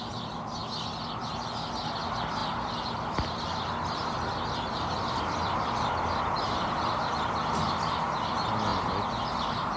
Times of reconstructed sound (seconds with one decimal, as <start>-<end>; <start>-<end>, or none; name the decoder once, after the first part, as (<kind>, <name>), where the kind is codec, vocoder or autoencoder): none